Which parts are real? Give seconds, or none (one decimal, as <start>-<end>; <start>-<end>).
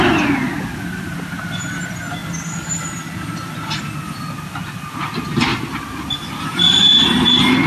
0.0-7.7